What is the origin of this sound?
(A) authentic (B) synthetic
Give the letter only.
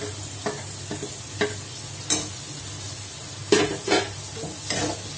A